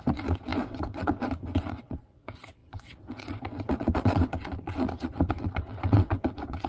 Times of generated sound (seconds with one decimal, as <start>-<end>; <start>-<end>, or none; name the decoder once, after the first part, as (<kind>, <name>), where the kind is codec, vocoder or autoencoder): 0.0-6.7 (vocoder, WaveNeXt)